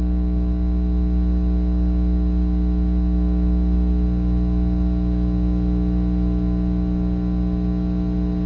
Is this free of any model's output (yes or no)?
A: yes